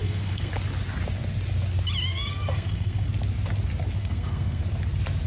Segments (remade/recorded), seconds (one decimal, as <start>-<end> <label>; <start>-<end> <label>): 0.0-0.5 remade; 0.5-2.1 recorded; 2.1-3.1 remade; 3.1-4.0 recorded; 4.0-4.6 remade; 4.6-5.3 recorded